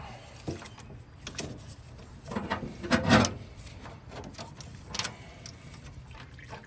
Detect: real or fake real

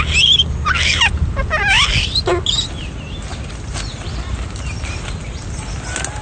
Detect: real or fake real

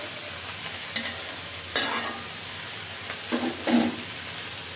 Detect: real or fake real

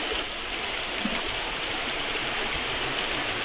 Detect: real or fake real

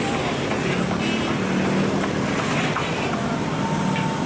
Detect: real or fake real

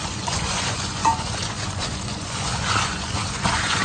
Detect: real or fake fake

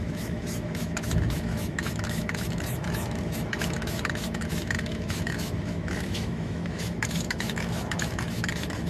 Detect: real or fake fake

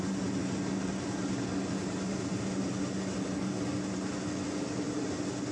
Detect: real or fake real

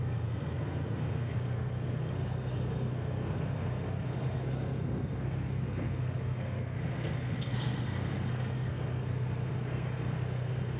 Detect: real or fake fake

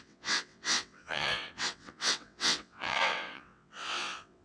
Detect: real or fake fake